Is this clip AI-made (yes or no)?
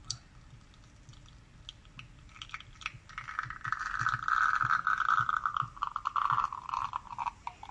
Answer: no